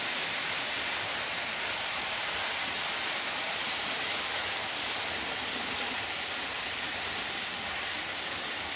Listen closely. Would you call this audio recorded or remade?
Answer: recorded